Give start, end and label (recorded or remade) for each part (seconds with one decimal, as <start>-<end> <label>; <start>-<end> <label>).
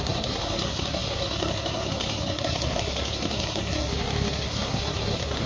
0.0-5.5 remade